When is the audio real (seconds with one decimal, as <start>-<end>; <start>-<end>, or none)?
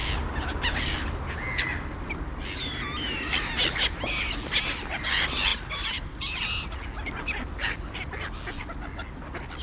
0.0-9.6